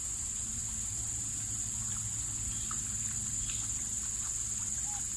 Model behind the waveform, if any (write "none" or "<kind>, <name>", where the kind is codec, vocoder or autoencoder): none